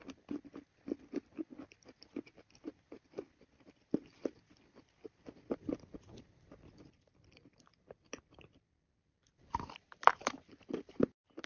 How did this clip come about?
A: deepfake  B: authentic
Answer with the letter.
A